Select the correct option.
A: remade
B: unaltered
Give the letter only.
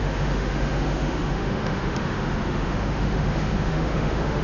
A